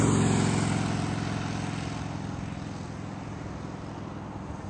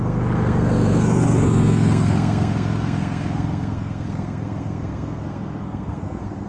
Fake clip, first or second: second